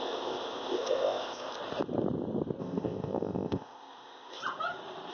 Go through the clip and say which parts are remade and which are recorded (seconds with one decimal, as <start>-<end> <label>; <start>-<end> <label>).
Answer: 0.0-1.6 remade; 1.6-2.6 recorded; 2.6-4.4 remade; 4.4-5.1 recorded